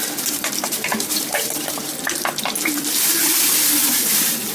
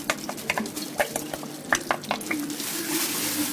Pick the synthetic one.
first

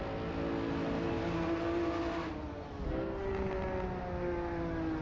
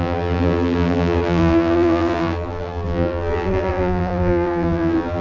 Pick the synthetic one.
second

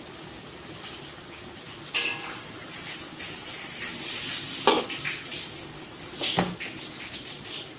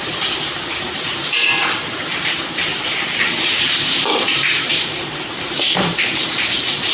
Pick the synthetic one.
second